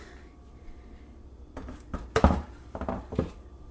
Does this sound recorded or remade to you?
remade